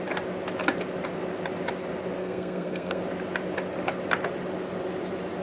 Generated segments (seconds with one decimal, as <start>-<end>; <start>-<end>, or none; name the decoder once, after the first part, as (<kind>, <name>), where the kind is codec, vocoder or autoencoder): 2.2-3.0 (codec, SNAC)